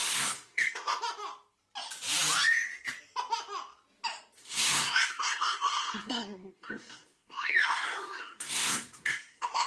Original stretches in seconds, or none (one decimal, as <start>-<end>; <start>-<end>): 1.0-4.4

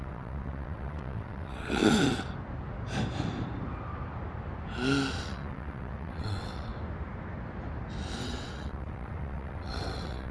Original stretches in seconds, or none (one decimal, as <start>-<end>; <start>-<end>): 1.8-5.2; 6.7-8.2

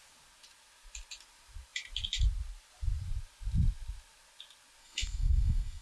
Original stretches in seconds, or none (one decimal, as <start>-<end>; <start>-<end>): 0.0-4.8

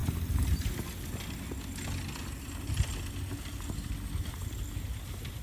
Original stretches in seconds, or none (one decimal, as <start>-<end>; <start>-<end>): 0.0-5.4

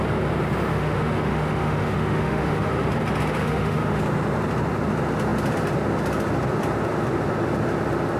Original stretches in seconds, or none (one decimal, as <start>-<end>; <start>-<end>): 0.0-0.7; 2.7-3.4; 4.0-8.2

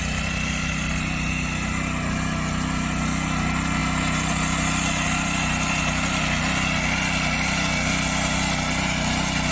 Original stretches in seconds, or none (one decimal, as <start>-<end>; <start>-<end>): 0.0-9.5